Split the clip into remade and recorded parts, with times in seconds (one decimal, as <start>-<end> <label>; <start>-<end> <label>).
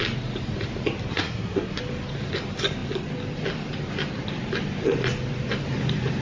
0.0-1.1 recorded; 1.1-1.8 remade; 1.8-6.2 recorded